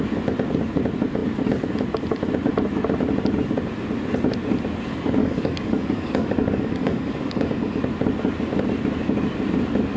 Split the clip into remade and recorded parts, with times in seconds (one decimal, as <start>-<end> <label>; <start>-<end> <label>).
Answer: 0.0-5.2 recorded; 5.2-7.8 remade; 7.8-10.0 recorded